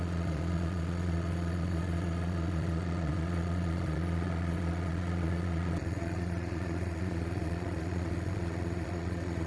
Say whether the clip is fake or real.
fake